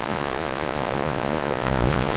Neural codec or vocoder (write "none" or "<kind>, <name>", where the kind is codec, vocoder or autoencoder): vocoder, Vocos